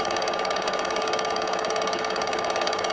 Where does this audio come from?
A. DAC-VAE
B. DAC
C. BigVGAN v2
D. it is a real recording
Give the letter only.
B